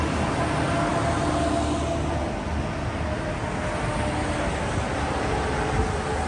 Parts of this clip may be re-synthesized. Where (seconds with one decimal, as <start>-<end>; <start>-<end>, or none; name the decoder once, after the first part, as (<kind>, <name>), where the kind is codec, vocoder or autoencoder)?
none